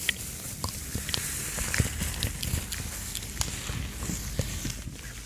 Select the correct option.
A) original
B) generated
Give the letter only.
A